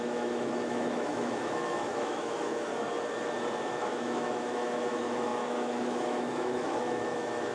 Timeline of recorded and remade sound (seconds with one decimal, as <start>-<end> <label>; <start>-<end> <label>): 0.0-2.7 remade; 2.7-3.6 recorded; 3.6-7.5 remade